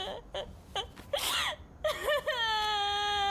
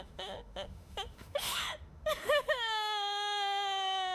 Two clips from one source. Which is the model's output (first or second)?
second